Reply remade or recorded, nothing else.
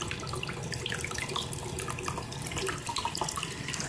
recorded